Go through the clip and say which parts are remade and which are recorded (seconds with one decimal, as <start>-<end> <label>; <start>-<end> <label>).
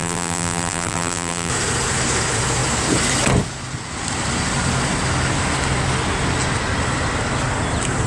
0.0-1.5 remade; 1.5-8.1 recorded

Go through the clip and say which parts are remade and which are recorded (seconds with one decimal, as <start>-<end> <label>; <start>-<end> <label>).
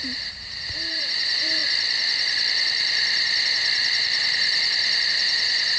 0.0-1.6 remade; 1.6-5.1 recorded; 5.1-5.8 remade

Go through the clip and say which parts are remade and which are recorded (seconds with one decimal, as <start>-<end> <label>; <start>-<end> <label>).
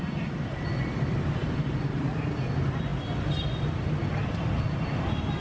0.0-5.4 remade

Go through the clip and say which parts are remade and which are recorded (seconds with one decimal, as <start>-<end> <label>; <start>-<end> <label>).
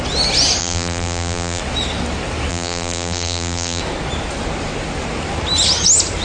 0.0-0.6 recorded; 0.6-1.6 remade; 1.6-2.5 recorded; 2.5-3.8 remade; 3.8-6.2 recorded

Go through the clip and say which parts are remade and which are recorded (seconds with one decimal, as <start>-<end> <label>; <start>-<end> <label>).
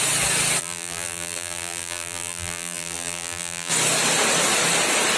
0.0-0.6 recorded; 0.6-3.7 remade; 3.7-5.2 recorded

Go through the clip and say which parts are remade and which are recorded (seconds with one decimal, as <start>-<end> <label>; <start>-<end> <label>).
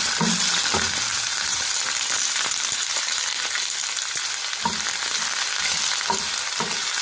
0.0-1.1 recorded; 1.1-3.2 remade; 3.2-7.0 recorded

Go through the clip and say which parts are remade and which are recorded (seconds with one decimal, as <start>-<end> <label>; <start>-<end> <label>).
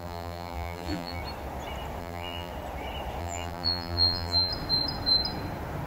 0.0-1.2 remade; 1.2-2.0 recorded; 2.0-2.5 remade; 2.5-3.2 recorded; 3.2-4.5 remade; 4.5-5.9 recorded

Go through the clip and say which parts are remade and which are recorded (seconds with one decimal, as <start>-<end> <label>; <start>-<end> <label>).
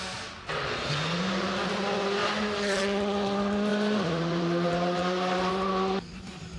0.0-2.2 recorded; 2.2-2.8 remade; 2.8-3.7 recorded; 3.7-5.5 remade; 5.5-6.6 recorded